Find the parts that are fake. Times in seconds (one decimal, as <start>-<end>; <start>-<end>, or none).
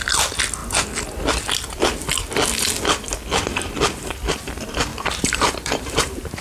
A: 4.9-6.4